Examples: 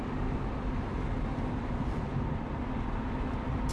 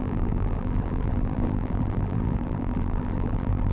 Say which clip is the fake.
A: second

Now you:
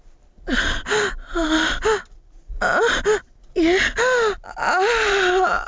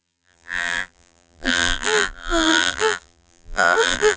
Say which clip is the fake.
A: second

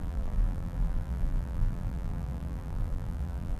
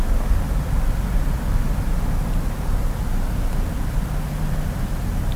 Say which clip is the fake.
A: first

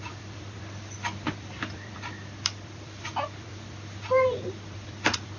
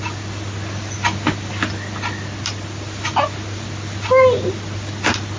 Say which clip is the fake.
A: first